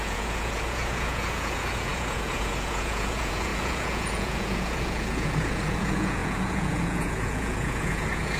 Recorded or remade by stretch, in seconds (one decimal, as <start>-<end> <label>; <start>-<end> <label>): 0.0-8.4 remade